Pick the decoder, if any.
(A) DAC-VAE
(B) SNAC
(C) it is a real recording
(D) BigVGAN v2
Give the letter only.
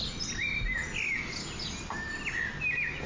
C